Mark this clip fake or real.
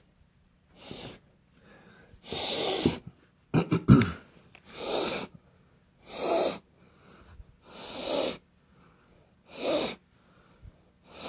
real